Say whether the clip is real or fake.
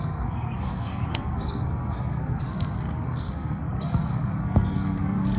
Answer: fake